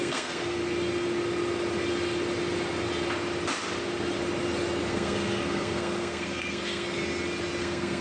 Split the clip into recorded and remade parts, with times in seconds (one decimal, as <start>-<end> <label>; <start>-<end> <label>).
0.0-0.6 remade; 0.6-4.9 recorded; 4.9-7.0 remade; 7.0-7.6 recorded; 7.6-8.0 remade